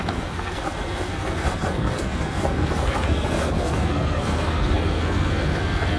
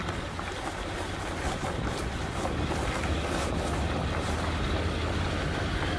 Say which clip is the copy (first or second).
first